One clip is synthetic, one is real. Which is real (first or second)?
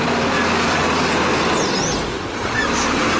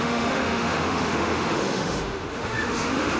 first